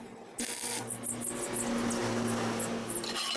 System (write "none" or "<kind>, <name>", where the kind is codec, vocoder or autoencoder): none